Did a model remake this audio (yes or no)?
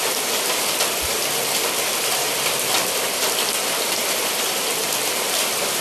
yes